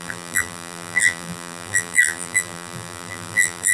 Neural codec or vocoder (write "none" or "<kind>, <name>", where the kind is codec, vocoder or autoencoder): vocoder, BigVGAN v2